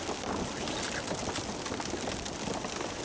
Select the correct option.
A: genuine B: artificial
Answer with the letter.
A